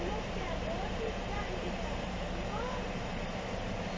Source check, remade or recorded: remade